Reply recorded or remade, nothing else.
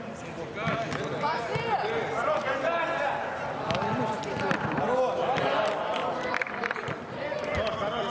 recorded